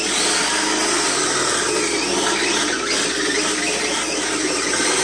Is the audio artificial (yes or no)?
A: no